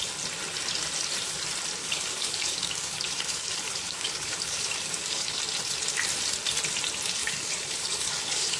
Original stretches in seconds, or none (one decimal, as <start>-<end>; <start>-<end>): 0.0-1.8; 5.4-7.2